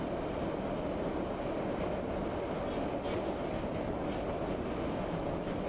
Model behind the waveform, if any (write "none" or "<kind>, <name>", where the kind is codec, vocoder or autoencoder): none